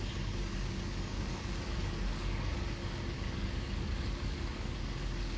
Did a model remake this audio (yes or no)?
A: yes